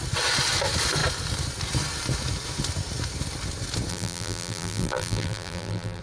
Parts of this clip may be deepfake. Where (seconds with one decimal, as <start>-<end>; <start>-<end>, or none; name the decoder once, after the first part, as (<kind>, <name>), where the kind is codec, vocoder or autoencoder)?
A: 3.9-6.0 (vocoder, BigVGAN v2)